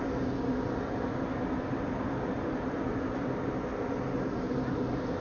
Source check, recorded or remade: recorded